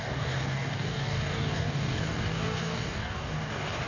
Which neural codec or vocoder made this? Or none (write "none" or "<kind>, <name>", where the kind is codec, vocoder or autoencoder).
codec, DAC